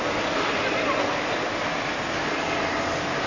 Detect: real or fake real